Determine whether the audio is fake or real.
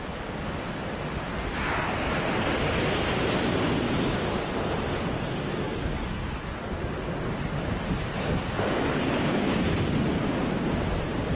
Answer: real